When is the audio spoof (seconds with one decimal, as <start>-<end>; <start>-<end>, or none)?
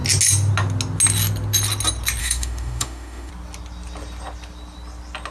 2.2-3.3